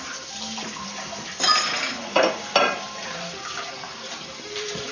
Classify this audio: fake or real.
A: fake